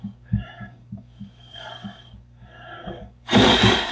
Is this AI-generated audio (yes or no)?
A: yes